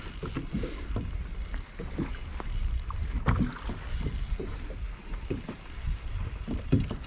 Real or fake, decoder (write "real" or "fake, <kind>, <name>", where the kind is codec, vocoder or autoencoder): real